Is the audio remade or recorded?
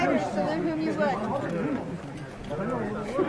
recorded